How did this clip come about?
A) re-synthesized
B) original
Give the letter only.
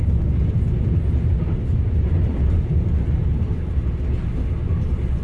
B